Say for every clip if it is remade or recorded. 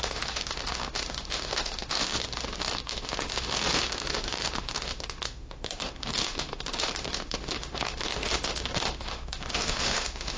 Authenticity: remade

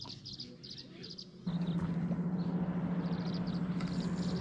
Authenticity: recorded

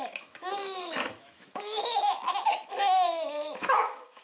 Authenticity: remade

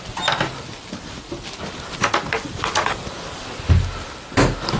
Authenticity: recorded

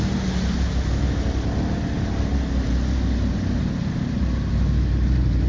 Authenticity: recorded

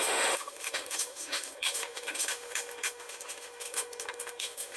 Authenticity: remade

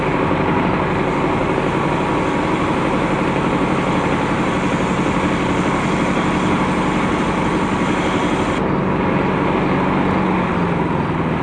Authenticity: recorded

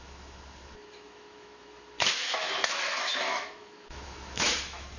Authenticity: remade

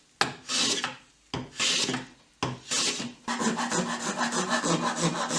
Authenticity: recorded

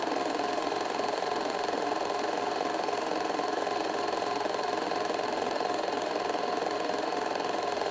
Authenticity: remade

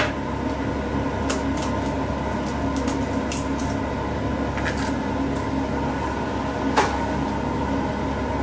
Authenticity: recorded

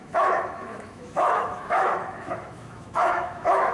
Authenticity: remade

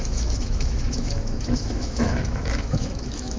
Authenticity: remade